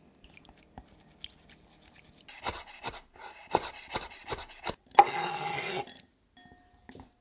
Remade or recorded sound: recorded